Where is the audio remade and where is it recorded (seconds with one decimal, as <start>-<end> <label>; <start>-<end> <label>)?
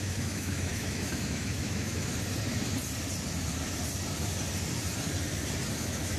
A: 0.0-2.1 remade; 2.1-5.8 recorded; 5.8-6.2 remade